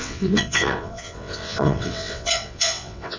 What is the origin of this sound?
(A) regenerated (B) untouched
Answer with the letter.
A